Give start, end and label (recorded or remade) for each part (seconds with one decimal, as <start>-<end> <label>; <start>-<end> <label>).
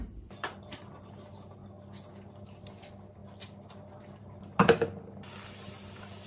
0.0-6.3 recorded